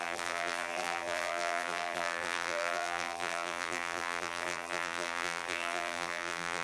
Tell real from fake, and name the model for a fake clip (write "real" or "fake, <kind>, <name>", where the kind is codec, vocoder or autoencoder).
fake, vocoder, BigVGAN v2